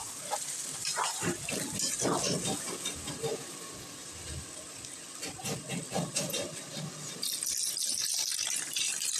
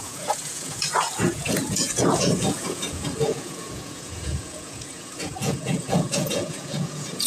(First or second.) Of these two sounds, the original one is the first